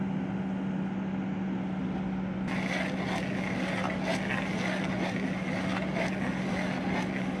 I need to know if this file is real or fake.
real